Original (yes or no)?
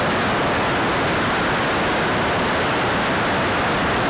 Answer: yes